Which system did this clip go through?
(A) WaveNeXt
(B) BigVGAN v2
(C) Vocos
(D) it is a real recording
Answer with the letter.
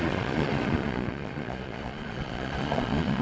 C